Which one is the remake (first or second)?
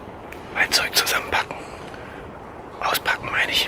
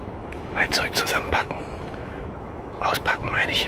second